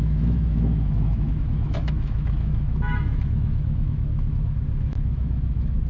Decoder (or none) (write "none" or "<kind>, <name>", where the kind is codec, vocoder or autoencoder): autoencoder, DAC-VAE